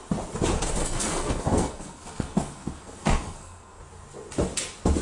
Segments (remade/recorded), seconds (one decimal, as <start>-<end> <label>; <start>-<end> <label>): 0.0-0.8 recorded; 0.8-3.8 remade; 3.8-5.0 recorded